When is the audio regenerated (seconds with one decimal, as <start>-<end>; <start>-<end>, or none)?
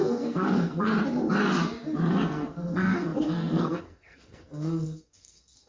0.0-0.9; 2.1-5.7